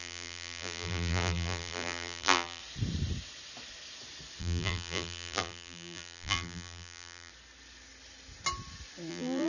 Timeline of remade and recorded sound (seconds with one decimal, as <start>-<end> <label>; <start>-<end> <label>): 0.0-2.6 remade; 2.6-4.4 recorded; 4.4-7.3 remade; 7.3-9.1 recorded; 9.1-9.5 remade